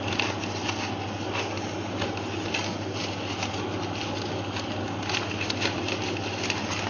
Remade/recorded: recorded